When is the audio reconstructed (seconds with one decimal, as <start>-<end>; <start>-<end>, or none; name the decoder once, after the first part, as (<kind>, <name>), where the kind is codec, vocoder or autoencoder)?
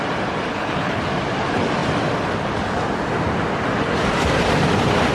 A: 0.5-1.0 (codec, HILCodec)